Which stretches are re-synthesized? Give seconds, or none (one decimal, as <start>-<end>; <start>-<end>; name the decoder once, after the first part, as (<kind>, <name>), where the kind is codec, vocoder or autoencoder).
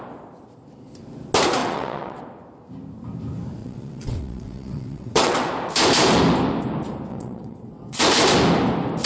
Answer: 1.6-2.2 (vocoder, WaveNeXt); 3.6-5.5; 7.1-8.0